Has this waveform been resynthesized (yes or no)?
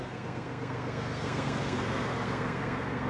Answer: yes